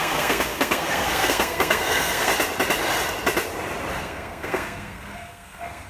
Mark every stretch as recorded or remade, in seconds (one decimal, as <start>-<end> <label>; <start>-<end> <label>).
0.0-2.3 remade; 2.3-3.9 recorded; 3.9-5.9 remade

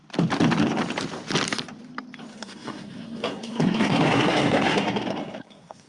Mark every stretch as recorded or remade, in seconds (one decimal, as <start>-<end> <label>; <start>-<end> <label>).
0.0-2.3 recorded; 2.3-5.9 remade

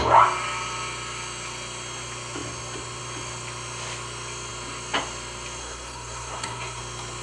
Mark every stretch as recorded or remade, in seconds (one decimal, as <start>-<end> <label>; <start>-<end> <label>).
0.0-5.6 recorded; 5.6-6.8 remade; 6.8-7.2 recorded